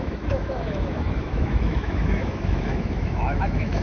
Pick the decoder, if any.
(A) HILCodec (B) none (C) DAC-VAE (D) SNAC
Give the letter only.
C